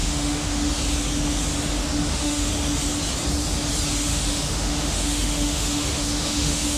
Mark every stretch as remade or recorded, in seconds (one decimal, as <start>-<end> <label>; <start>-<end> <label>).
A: 0.0-0.7 remade; 0.7-2.0 recorded; 2.0-2.5 remade; 2.5-4.1 recorded; 4.1-6.8 remade